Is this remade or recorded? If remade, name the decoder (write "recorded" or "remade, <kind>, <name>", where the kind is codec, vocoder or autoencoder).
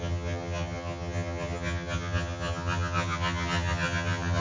remade, vocoder, HiFi-GAN